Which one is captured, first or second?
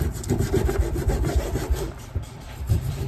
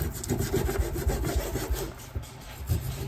second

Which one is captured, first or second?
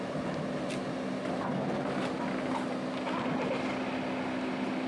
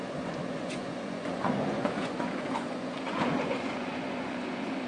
first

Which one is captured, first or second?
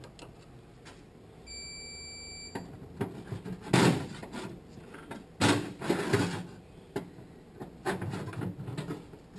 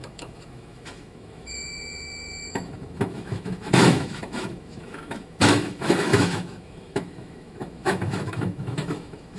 first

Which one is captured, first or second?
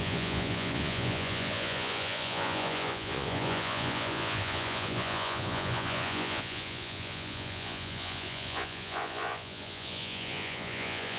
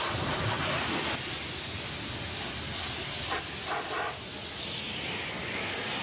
second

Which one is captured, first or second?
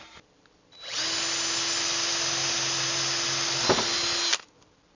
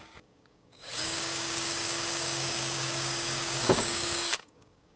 first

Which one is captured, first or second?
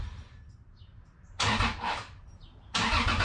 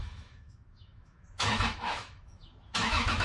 first